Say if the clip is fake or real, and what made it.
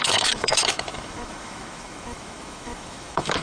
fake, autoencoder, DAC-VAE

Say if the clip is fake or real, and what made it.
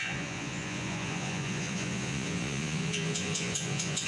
fake, vocoder, Vocos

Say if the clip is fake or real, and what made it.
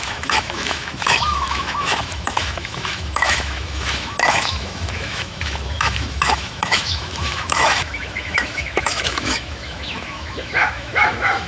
fake, autoencoder, DAC-VAE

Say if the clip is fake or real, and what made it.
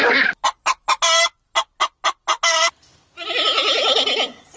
real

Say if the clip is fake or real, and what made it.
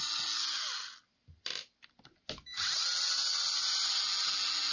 real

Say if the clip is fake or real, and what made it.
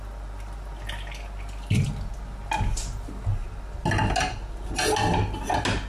real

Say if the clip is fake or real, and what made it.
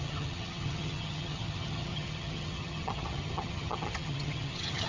fake, vocoder, HiFi-GAN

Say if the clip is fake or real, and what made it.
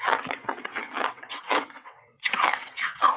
fake, vocoder, WaveNeXt